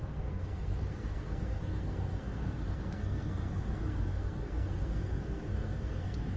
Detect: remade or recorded remade